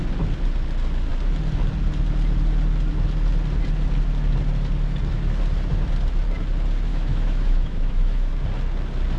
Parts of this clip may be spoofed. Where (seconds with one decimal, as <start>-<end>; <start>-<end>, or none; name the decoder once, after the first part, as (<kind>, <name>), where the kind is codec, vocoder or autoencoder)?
6.9-8.3 (autoencoder, DAC-VAE)